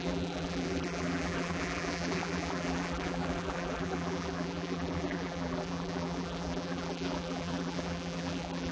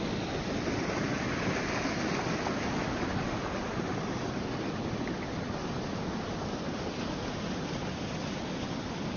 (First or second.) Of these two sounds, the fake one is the first